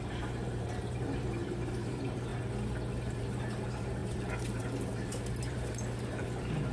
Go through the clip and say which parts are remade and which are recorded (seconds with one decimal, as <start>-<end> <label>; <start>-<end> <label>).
0.0-2.3 remade; 2.3-3.2 recorded; 3.2-6.7 remade